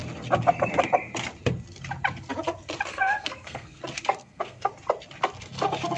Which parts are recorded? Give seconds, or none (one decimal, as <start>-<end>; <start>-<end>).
0.0-2.9; 3.8-4.2; 4.7-6.0